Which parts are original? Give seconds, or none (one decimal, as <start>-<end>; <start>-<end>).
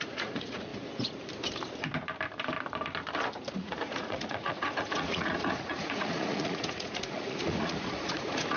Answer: 0.7-3.5